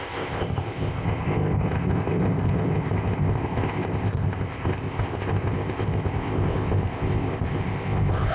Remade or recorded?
remade